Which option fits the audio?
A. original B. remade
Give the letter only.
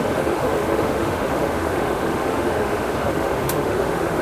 B